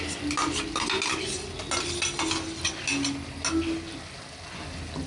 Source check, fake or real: real